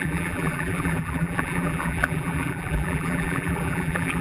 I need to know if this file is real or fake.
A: fake